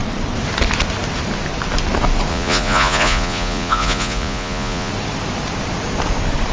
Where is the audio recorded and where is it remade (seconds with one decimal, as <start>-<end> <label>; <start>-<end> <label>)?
0.0-2.3 recorded; 2.3-4.9 remade; 4.9-6.5 recorded